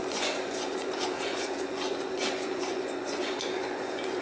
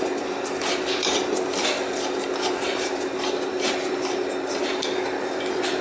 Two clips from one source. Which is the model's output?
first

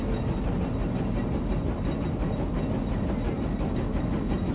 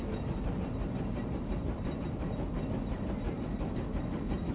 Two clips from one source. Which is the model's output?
second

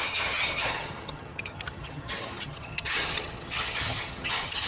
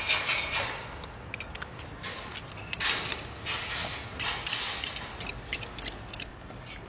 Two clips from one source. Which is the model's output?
first